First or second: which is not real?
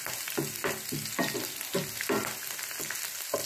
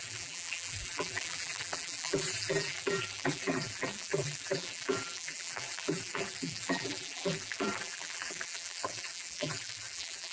second